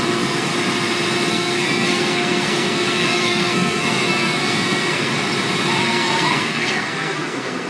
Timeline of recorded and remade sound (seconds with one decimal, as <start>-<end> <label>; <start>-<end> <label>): 0.0-0.5 remade; 0.5-1.3 recorded; 1.3-5.1 remade; 5.1-5.8 recorded; 5.8-7.7 remade